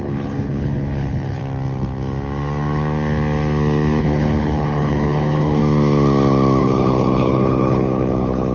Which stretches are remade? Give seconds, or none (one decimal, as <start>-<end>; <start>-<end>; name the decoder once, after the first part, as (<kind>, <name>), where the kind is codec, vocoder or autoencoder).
0.0-1.4 (codec, HILCodec); 4.0-5.6; 6.6-8.5